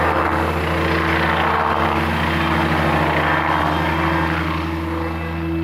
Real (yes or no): yes